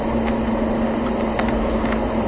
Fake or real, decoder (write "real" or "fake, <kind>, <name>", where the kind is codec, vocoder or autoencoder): real